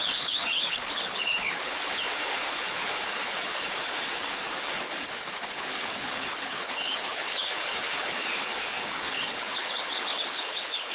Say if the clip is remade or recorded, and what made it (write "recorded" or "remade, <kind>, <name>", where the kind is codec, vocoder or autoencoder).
remade, codec, HILCodec